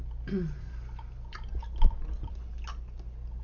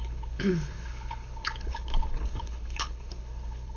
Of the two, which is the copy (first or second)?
second